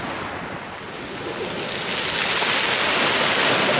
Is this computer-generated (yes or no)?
no